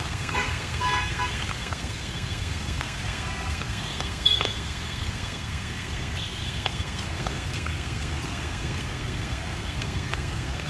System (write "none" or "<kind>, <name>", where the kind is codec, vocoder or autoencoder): codec, SNAC